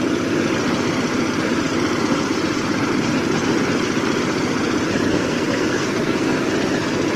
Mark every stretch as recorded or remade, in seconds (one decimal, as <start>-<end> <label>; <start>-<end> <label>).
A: 0.0-5.1 recorded; 5.1-6.5 remade; 6.5-7.2 recorded